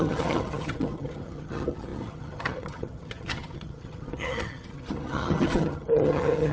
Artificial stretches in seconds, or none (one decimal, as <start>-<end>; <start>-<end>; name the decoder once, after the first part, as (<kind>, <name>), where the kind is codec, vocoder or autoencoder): 0.0-6.5 (vocoder, HiFi-GAN)